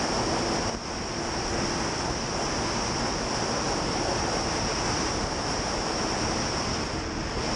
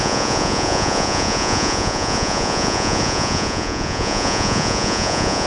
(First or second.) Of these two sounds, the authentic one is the first